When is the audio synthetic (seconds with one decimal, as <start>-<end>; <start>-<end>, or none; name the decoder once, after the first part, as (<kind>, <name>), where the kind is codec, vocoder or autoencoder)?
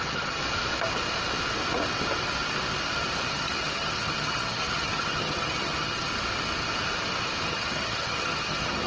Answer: 0.0-0.4 (vocoder, HiFi-GAN); 3.3-6.1; 7.5-8.9